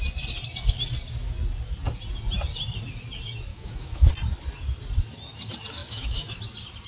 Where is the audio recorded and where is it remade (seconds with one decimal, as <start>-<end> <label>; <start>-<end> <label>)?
0.0-3.5 recorded; 3.5-4.1 remade; 4.1-5.8 recorded; 5.8-6.4 remade; 6.4-6.9 recorded